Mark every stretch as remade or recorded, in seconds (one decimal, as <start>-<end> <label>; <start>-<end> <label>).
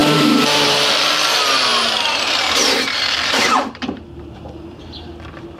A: 0.0-0.8 remade; 0.8-1.7 recorded; 1.7-5.1 remade; 5.1-5.6 recorded